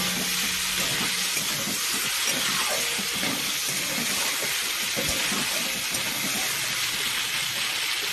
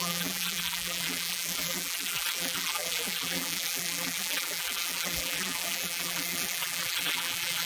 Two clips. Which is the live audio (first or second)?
first